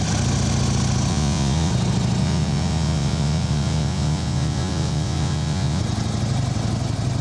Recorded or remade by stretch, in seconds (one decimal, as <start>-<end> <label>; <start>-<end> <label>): 0.0-1.1 recorded; 1.1-1.7 remade; 1.7-2.2 recorded; 2.2-5.8 remade; 5.8-7.2 recorded